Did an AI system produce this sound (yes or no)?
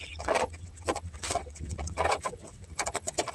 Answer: yes